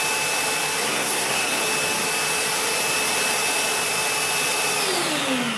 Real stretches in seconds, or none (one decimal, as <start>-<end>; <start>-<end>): 0.0-0.8; 1.6-5.6